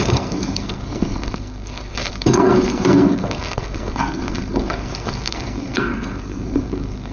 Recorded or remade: remade